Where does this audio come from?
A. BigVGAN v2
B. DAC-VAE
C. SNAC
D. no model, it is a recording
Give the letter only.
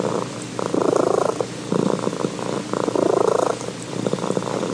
D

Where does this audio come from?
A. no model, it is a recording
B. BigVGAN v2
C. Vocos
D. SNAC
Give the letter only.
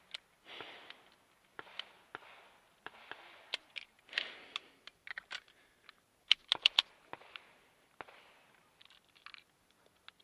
A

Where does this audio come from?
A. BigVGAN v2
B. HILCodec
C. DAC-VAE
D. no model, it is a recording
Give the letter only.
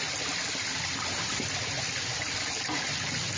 D